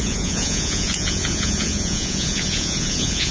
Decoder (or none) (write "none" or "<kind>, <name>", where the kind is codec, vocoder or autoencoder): vocoder, Vocos